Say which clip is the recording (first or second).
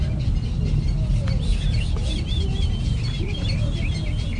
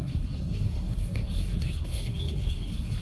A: first